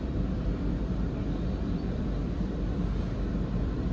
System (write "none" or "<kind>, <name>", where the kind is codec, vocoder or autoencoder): vocoder, BigVGAN v2